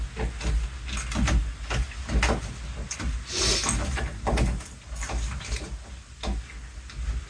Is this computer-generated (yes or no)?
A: no